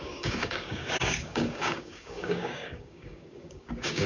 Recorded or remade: remade